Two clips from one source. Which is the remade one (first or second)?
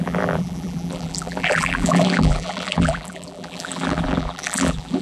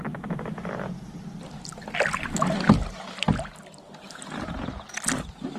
first